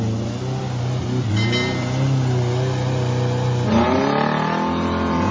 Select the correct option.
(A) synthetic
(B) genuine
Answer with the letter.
B